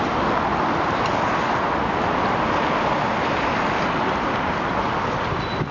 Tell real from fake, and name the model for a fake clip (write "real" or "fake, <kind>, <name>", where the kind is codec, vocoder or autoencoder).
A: real